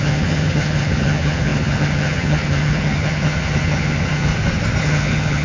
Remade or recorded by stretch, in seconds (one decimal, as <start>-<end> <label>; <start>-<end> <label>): 0.0-4.3 remade; 4.3-4.8 recorded; 4.8-5.4 remade